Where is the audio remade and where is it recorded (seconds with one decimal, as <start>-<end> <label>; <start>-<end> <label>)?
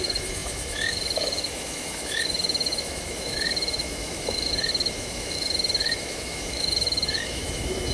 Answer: 0.0-7.9 remade